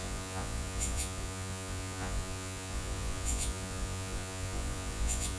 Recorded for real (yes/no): no